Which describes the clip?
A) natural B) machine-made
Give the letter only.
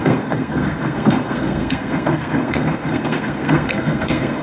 B